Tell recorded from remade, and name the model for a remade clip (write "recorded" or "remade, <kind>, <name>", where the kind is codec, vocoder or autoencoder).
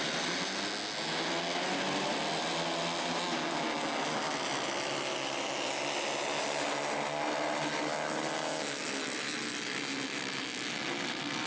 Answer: recorded